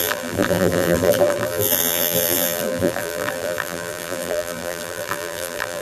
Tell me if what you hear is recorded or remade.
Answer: remade